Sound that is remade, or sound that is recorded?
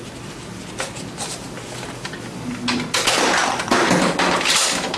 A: recorded